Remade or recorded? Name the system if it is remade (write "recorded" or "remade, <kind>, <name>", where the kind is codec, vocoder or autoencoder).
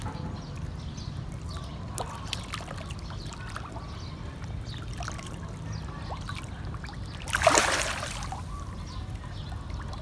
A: recorded